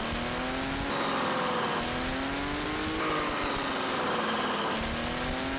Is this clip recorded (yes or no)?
yes